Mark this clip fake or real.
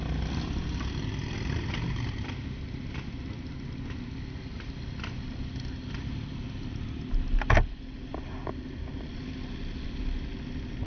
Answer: real